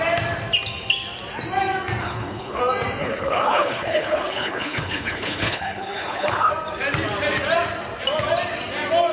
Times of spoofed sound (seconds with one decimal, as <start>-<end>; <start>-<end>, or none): 2.0-2.6; 3.0-6.5